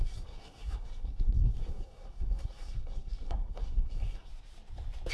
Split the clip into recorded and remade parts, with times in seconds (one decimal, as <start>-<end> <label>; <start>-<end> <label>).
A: 0.0-4.3 remade; 4.3-5.1 recorded